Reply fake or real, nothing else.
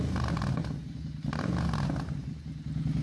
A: real